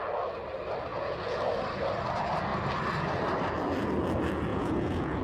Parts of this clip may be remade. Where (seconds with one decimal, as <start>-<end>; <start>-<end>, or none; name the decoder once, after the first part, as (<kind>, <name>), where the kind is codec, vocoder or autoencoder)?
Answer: 0.9-1.4 (vocoder, Vocos); 4.5-5.2